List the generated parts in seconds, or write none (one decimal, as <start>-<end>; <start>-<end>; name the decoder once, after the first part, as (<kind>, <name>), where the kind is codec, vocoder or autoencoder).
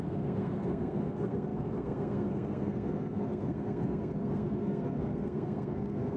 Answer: 0.0-6.2 (codec, SNAC)